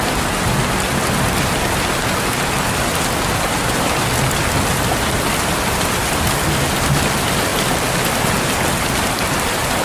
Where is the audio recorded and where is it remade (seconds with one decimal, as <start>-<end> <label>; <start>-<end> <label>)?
0.0-9.8 recorded